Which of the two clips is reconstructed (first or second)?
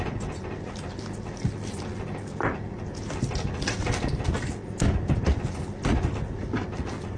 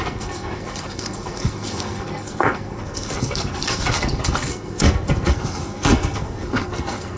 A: second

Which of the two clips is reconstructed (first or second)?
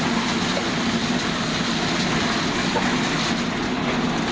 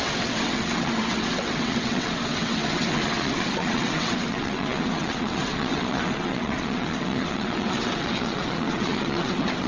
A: second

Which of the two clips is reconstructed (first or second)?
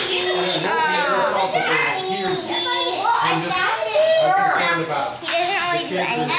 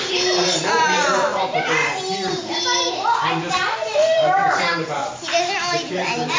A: second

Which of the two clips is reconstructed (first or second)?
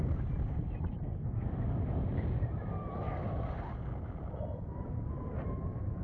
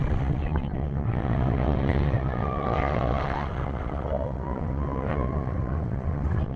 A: second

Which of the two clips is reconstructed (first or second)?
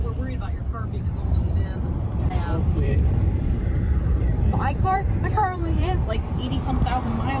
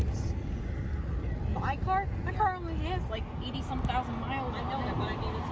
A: first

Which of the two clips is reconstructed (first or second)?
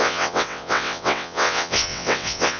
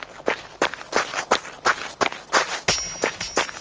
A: first